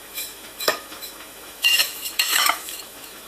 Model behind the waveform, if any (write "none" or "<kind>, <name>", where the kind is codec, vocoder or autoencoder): autoencoder, DAC-VAE